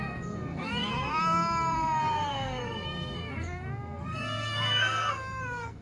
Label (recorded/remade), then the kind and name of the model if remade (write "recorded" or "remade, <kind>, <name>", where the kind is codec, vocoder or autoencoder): remade, codec, SNAC